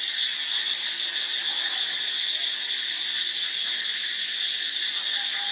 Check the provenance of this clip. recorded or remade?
recorded